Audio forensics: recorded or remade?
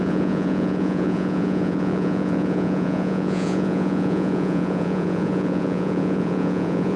remade